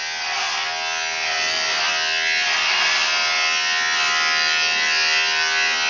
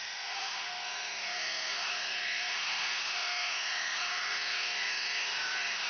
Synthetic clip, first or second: second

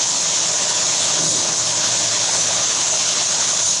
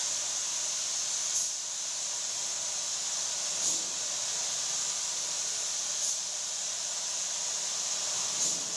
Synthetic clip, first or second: first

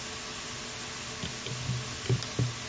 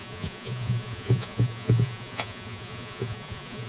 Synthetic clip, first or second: second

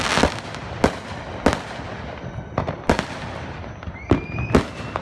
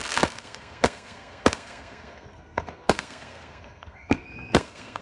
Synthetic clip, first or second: second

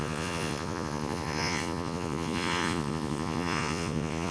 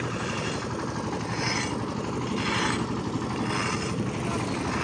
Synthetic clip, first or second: first